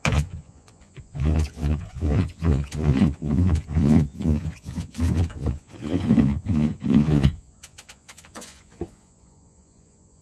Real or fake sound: fake